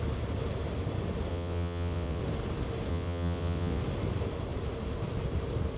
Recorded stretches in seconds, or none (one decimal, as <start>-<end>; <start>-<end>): 0.0-1.3; 2.2-2.9; 3.8-5.8